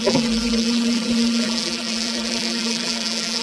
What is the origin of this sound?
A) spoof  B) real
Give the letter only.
A